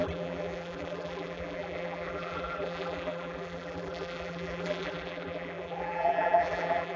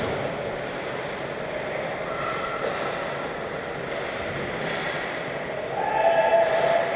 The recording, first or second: second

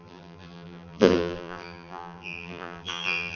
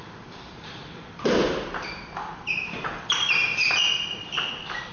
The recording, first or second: second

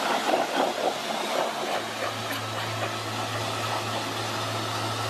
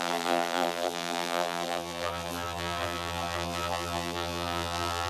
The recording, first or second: first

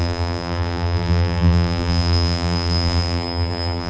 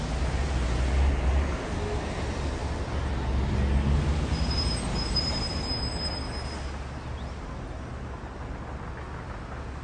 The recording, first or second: second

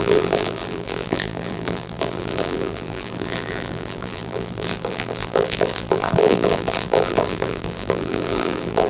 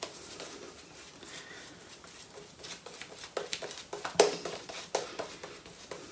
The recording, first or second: second